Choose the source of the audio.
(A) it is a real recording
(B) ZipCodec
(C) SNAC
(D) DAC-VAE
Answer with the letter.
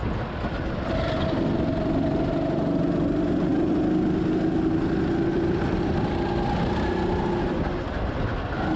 A